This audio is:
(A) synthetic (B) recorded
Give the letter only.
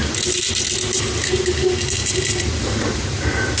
B